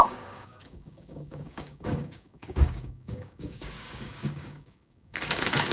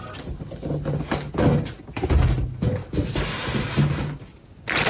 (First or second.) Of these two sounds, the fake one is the first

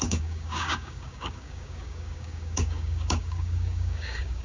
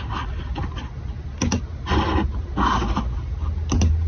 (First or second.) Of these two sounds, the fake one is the first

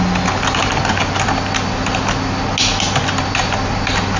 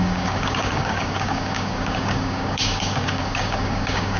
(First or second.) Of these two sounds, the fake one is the second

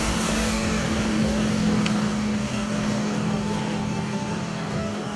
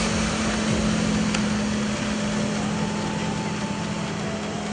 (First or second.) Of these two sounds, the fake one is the first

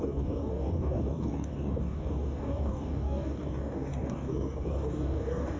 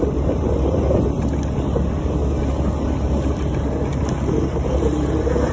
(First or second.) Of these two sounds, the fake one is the first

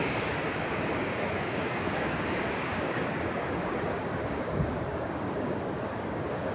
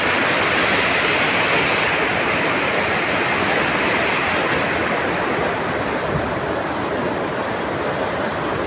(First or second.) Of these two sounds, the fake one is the first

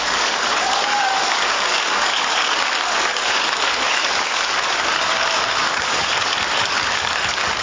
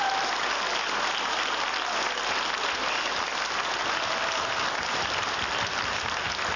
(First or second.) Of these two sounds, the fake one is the first